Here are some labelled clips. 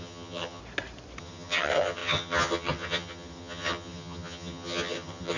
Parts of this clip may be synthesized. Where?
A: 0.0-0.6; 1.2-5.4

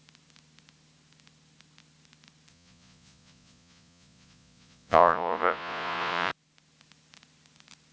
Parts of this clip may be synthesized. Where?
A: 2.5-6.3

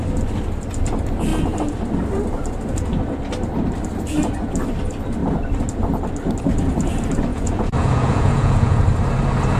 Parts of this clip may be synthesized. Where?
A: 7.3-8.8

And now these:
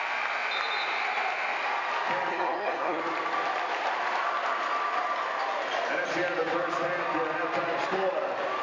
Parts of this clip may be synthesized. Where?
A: 2.3-3.0

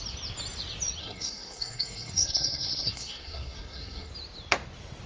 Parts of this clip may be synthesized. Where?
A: 1.0-4.1

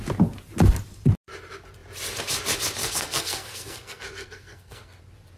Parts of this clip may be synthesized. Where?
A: 2.8-5.0

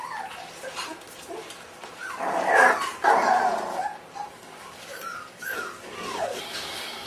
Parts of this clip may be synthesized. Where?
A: 4.3-7.1

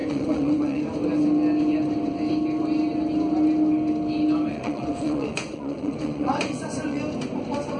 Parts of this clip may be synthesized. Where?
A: 0.0-0.8; 4.5-7.0